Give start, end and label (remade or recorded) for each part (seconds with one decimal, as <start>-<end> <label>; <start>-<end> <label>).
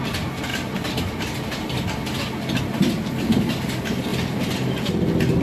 0.0-5.4 recorded